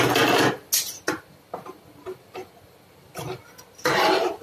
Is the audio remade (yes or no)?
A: no